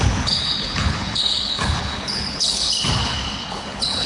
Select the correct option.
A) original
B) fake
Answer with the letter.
B